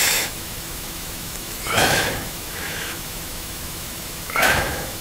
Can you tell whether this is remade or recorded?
remade